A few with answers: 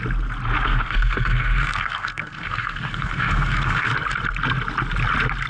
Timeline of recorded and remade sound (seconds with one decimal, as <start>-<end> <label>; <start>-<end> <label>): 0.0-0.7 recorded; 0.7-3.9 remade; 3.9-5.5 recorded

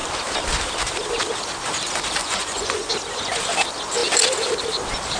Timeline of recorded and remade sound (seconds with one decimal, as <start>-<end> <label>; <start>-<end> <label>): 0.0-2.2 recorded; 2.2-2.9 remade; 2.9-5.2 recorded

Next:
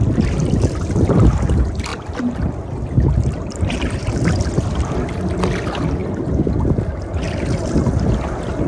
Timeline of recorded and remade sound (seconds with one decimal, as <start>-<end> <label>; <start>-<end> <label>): 0.0-8.7 recorded